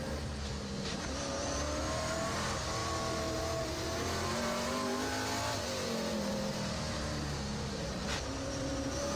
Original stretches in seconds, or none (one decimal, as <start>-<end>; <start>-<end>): 0.0-9.2